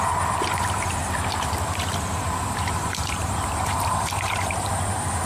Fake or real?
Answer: fake